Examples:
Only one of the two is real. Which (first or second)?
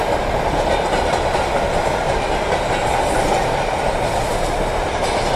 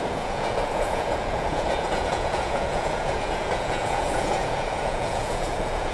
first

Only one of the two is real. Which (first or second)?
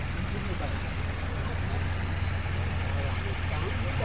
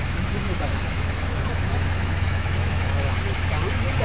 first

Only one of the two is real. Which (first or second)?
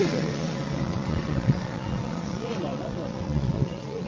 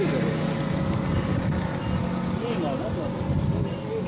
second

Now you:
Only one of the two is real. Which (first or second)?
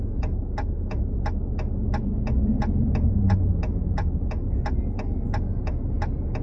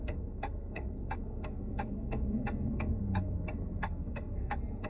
first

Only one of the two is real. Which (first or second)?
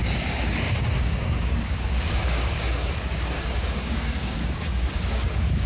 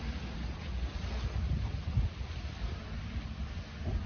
second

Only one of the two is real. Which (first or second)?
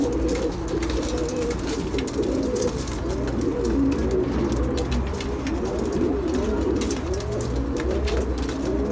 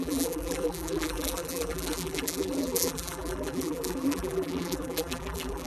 first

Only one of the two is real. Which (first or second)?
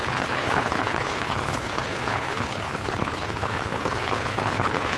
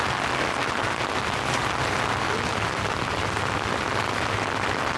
second